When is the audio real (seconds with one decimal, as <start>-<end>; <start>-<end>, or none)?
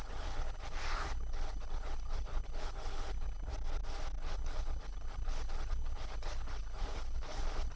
3.5-4.2